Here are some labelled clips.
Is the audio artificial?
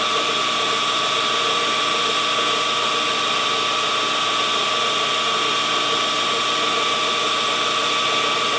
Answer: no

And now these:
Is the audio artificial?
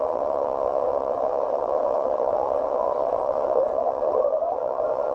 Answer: yes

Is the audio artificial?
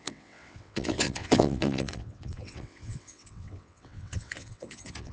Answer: yes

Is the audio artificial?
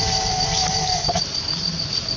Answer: no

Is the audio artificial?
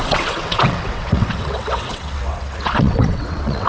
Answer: yes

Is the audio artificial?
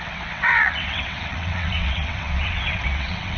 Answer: yes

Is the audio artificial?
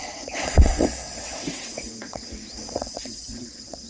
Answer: yes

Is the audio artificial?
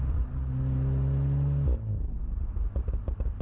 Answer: no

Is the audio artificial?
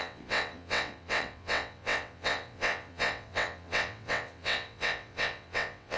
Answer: yes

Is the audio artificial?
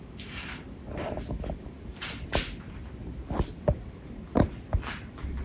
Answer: no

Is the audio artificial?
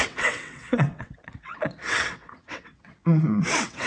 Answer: yes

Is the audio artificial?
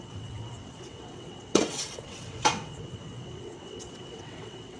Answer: yes